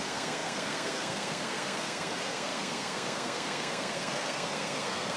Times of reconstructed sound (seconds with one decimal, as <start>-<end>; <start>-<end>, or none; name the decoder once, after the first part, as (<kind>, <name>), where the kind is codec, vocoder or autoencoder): 0.0-5.2 (codec, SNAC)